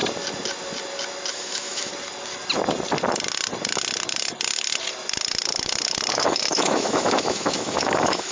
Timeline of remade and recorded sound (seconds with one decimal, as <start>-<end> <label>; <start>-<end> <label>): 0.0-1.3 recorded; 1.3-1.9 remade; 1.9-6.1 recorded; 6.1-8.3 remade